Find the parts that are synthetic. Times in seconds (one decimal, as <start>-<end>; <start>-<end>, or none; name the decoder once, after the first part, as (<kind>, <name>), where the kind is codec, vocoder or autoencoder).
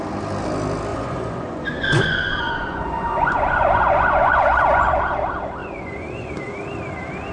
0.9-5.0 (vocoder, Vocos); 5.6-6.3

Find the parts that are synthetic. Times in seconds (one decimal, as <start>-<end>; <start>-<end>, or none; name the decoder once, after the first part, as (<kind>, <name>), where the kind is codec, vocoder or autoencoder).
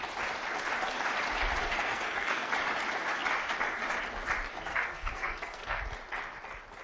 1.6-2.5 (codec, SNAC); 4.7-5.8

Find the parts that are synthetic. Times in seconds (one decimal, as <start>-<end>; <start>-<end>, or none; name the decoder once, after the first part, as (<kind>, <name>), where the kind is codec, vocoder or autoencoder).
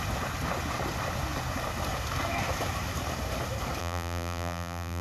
3.8-5.0 (vocoder, BigVGAN v2)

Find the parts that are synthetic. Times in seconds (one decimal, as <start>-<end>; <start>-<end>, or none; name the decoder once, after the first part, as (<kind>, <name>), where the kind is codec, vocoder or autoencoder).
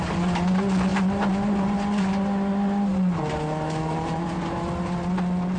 none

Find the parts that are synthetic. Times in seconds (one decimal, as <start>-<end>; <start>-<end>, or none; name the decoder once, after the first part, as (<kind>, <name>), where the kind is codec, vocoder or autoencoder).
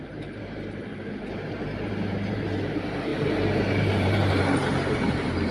0.0-0.9 (vocoder, BigVGAN v2); 1.5-5.5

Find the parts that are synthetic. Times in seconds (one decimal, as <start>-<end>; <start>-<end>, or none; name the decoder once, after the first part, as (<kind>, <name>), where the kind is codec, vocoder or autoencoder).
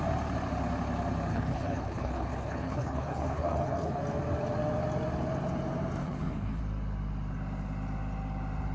1.3-4.0 (codec, HILCodec); 6.0-6.6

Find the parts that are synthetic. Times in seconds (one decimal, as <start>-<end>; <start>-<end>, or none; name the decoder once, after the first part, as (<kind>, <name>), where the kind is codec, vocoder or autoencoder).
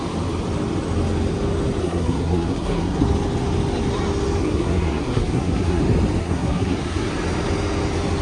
1.8-3.0 (codec, SNAC); 4.4-5.8; 6.2-7.1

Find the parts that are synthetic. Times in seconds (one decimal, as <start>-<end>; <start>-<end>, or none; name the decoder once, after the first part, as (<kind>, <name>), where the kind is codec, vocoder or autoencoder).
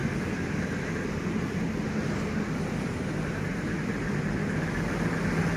none